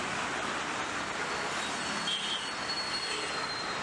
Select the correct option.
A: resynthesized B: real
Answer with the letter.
B